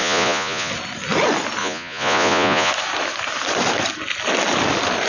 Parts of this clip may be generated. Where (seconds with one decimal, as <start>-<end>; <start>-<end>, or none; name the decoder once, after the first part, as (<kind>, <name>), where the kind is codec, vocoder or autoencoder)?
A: 0.0-0.7 (vocoder, Vocos); 1.6-2.7